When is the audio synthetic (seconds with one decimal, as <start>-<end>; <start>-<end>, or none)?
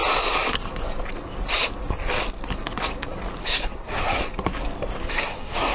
3.4-4.2; 5.1-5.7